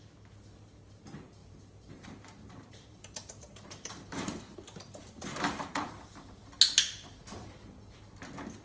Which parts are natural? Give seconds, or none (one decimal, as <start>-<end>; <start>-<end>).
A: 0.0-1.4; 5.9-8.6